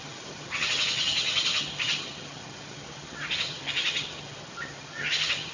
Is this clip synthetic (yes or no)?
yes